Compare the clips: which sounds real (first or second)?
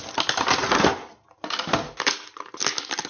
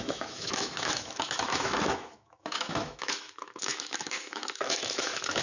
first